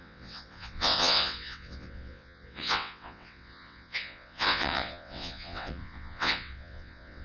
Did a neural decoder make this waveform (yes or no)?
yes